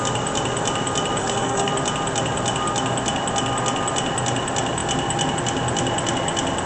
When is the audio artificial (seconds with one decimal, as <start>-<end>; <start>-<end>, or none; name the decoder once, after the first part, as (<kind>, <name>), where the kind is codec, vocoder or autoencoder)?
1.2-1.7 (codec, SNAC)